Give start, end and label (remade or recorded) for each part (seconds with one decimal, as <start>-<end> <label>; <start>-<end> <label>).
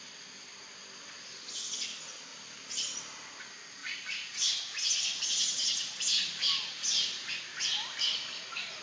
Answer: 0.0-0.8 recorded; 0.8-1.5 remade; 1.5-8.8 recorded